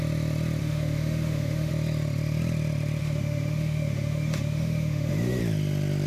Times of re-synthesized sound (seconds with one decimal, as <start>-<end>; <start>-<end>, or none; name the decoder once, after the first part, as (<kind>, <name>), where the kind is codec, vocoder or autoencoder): 0.6-1.7 (autoencoder, DAC-VAE); 3.0-5.4